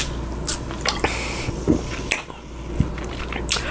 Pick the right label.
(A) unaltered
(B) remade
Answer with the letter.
A